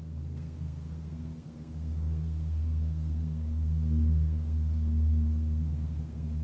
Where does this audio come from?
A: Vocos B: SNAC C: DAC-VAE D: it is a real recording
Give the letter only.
B